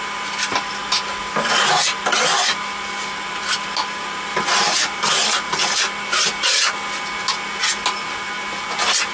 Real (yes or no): yes